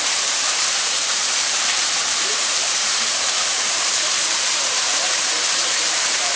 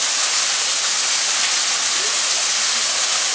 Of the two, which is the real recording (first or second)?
second